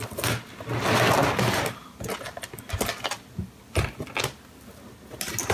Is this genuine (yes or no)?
yes